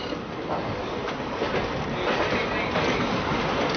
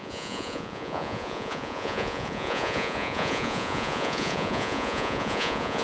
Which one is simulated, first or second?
second